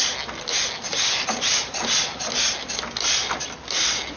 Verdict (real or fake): real